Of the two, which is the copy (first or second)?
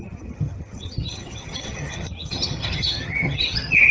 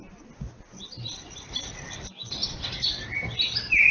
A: first